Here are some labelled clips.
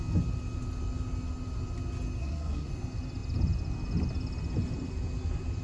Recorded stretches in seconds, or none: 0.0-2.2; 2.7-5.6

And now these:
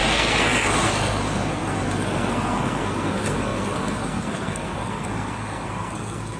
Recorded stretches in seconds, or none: none